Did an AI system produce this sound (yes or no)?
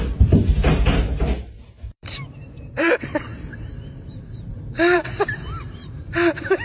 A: yes